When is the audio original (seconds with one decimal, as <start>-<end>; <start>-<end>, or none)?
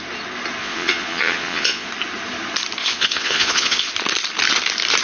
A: 0.0-0.6; 1.9-2.8; 3.9-5.0